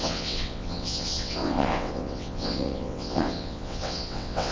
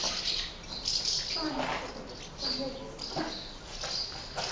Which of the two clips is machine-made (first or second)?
first